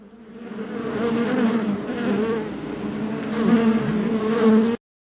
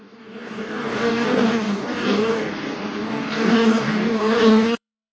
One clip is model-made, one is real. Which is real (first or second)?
first